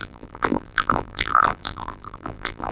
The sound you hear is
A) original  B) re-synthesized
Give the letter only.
B